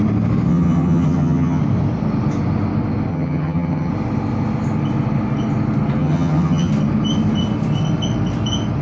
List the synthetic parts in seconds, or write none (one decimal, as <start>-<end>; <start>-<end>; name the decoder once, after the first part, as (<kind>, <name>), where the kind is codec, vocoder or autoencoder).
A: 0.5-1.6 (vocoder, HiFi-GAN); 3.1-3.9; 6.0-6.7